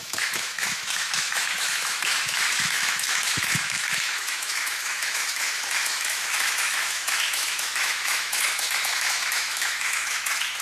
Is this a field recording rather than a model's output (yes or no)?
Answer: no